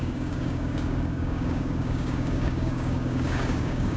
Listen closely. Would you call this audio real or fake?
fake